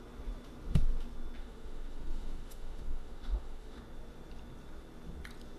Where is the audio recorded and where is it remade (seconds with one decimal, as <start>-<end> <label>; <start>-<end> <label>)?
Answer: 0.0-1.4 recorded; 1.4-3.8 remade; 3.8-5.6 recorded